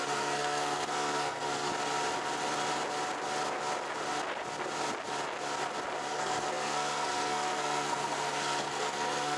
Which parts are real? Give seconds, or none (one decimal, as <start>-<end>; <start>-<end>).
1.7-6.1